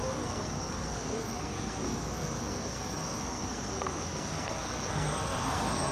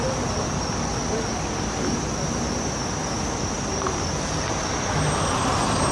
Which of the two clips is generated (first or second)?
first